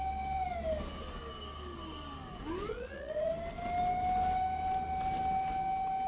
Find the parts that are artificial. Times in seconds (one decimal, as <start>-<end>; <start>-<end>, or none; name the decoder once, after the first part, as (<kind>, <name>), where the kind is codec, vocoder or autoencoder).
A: 2.7-3.3 (vocoder, Vocos)